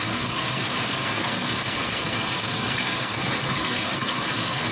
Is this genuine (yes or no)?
no